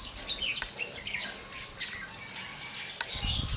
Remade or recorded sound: recorded